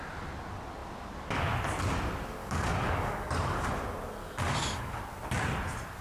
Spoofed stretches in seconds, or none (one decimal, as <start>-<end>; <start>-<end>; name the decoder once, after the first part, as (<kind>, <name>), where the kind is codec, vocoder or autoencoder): 2.4-3.7 (codec, DAC); 4.2-5.0